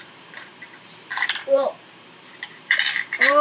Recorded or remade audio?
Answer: remade